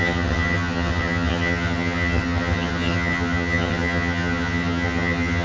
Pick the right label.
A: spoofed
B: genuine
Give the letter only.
A